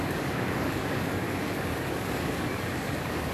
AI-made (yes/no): yes